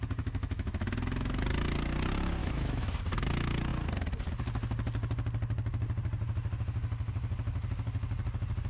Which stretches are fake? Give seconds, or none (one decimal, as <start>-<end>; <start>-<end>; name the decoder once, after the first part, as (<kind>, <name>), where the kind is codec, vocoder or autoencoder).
0.0-1.4 (autoencoder, DAC-VAE); 2.4-3.0